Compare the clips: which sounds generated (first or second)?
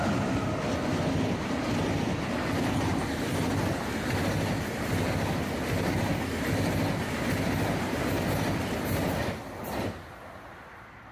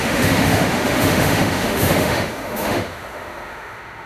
second